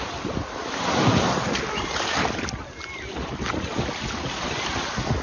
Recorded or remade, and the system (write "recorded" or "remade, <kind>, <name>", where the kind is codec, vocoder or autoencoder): recorded